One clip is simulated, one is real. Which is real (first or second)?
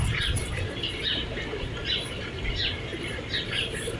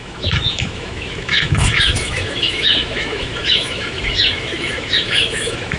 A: first